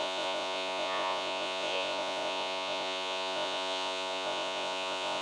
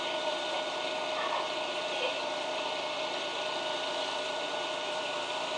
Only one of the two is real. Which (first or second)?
second